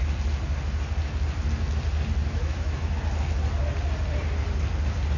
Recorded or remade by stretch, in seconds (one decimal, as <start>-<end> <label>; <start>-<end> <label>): 0.0-2.2 recorded; 2.2-3.0 remade; 3.0-5.2 recorded